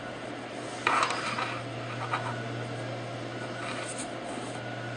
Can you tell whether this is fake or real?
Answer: real